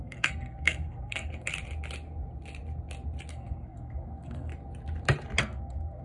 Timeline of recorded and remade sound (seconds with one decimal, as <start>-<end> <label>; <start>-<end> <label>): 0.0-1.5 remade; 1.5-3.3 recorded; 3.3-4.5 remade; 4.5-5.4 recorded; 5.4-6.0 remade